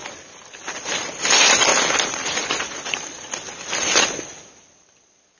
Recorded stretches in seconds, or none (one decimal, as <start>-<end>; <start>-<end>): 1.7-2.5